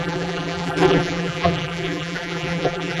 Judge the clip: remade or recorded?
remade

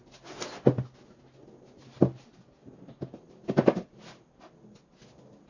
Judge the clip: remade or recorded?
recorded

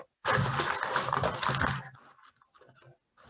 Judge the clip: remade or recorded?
recorded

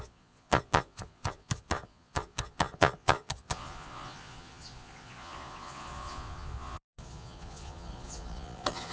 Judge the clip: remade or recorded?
remade